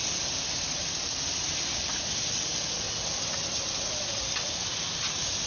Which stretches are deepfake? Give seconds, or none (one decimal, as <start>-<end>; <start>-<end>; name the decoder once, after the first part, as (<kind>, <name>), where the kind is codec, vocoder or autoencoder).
none